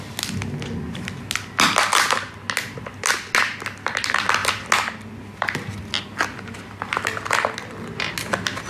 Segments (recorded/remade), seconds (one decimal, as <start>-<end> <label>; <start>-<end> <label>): 0.0-8.7 recorded

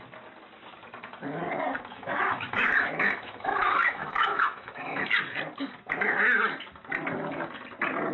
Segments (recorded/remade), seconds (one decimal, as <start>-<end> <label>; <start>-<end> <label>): 0.0-1.9 recorded; 1.9-5.0 remade; 5.0-8.1 recorded

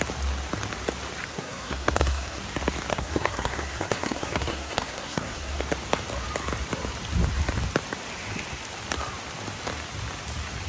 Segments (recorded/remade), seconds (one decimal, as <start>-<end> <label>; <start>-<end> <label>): 0.0-1.3 recorded; 1.3-2.4 remade; 2.4-2.9 recorded; 2.9-5.6 remade; 5.6-10.7 recorded

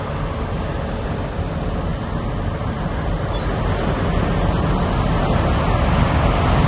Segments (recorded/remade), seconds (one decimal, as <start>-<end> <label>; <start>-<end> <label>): 0.0-6.7 recorded

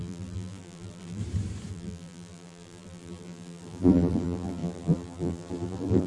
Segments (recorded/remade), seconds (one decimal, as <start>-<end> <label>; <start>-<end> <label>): 0.0-1.2 remade; 1.2-1.7 recorded; 1.7-6.1 remade

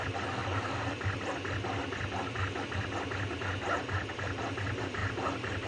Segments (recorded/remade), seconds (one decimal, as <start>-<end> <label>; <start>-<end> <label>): 0.0-5.7 recorded

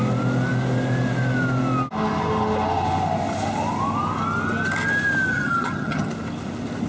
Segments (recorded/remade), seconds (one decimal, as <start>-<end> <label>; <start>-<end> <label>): 0.0-5.3 recorded; 5.3-6.1 remade; 6.1-6.9 recorded